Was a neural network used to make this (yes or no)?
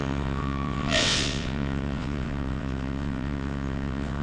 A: yes